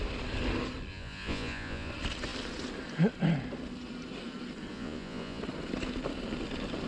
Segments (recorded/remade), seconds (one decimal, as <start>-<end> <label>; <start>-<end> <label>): 0.0-0.9 recorded; 0.9-1.9 remade; 1.9-4.7 recorded; 4.7-5.4 remade; 5.4-6.9 recorded